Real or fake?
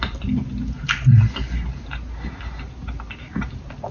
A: real